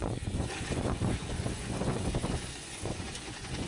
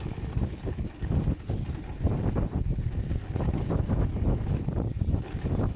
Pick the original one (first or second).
second